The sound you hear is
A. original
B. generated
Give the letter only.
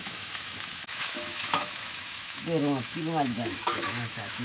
B